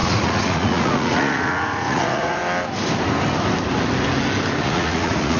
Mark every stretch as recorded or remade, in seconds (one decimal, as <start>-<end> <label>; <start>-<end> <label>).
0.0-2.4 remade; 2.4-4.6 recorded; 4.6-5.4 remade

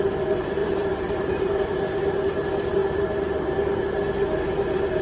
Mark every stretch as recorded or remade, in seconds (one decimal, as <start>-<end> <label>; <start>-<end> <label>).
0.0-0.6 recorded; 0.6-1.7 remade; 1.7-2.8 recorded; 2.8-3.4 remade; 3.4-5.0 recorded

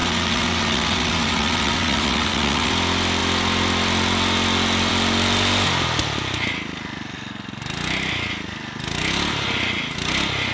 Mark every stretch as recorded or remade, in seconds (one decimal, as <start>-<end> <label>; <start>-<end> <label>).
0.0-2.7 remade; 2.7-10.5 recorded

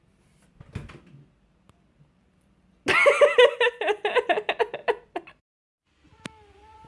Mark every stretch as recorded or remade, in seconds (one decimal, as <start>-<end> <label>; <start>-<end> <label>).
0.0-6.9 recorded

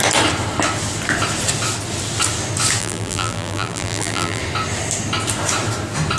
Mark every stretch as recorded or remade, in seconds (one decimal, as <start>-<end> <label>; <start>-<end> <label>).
0.0-2.8 recorded; 2.8-4.4 remade; 4.4-6.2 recorded

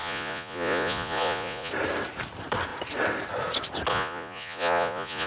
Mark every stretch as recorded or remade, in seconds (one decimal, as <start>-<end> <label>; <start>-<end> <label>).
0.0-1.7 remade; 1.7-3.9 recorded; 3.9-5.3 remade